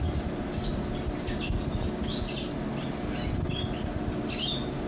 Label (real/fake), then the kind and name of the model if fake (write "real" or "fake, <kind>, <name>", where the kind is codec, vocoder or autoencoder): real